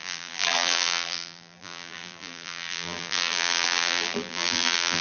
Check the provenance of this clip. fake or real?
fake